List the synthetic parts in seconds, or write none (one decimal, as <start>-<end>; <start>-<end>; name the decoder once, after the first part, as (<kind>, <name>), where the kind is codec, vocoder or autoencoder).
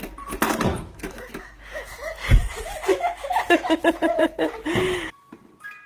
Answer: 0.7-1.9 (autoencoder, DAC-VAE); 2.9-3.8